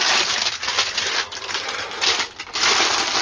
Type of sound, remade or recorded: recorded